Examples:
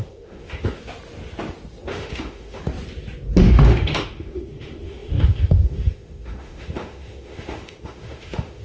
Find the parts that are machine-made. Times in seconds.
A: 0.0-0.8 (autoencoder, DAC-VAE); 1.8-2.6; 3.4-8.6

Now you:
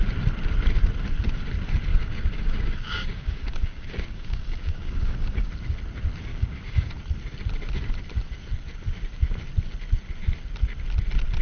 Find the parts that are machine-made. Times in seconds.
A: 1.9-5.5 (codec, DAC); 6.3-6.9